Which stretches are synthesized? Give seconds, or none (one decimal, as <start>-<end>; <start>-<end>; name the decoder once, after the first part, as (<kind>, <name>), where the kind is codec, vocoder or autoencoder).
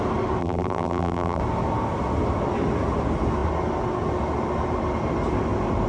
0.4-1.4 (vocoder, BigVGAN v2)